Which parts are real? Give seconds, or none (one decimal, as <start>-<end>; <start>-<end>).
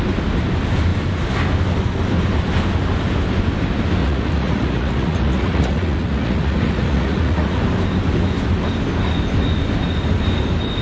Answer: 0.0-4.0; 7.6-10.8